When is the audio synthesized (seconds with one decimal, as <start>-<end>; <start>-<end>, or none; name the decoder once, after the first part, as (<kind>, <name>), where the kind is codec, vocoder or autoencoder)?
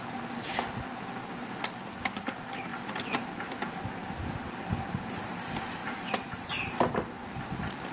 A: none